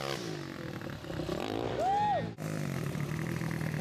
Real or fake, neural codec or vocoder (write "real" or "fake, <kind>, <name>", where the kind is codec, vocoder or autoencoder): real